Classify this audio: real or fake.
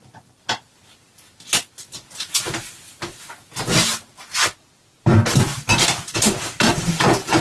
real